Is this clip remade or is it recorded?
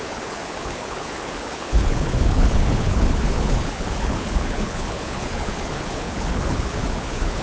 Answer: remade